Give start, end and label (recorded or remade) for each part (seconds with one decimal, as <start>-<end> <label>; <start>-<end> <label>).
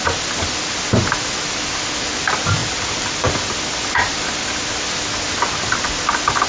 0.0-2.6 recorded; 2.6-4.4 remade; 4.4-6.5 recorded